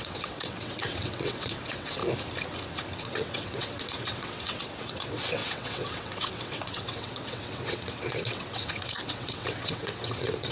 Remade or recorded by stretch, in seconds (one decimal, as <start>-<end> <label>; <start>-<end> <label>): 0.0-2.0 remade; 2.0-3.0 recorded; 3.0-10.5 remade